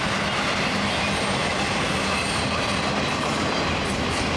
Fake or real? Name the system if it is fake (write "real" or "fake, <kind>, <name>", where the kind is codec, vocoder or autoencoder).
real